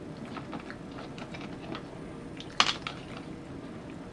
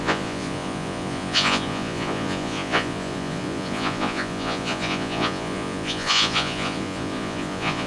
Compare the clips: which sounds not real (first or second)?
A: second